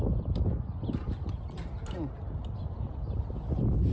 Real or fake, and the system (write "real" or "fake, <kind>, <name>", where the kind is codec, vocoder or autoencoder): real